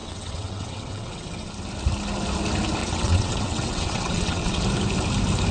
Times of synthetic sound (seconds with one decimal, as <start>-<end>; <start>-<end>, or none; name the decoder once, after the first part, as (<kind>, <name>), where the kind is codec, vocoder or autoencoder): 0.0-1.5 (vocoder, WaveNeXt); 2.8-4.6